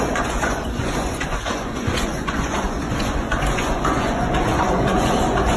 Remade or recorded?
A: remade